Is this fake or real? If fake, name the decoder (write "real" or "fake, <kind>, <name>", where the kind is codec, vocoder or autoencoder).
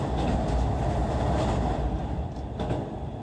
real